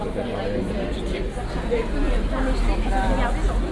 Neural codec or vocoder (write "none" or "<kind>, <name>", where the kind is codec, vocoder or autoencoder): none